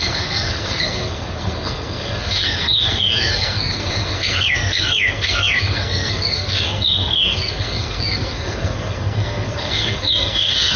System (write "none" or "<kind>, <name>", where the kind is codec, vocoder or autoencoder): codec, SNAC